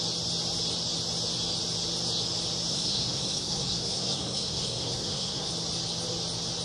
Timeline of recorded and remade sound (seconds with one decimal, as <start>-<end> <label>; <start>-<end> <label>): 0.0-2.7 recorded; 2.7-5.5 remade; 5.5-6.6 recorded